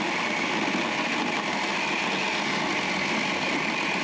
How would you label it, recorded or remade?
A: recorded